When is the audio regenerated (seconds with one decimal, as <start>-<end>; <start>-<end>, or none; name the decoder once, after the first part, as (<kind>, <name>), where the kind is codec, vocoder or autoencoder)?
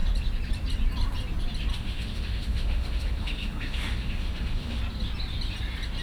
1.7-4.8 (autoencoder, DAC-VAE)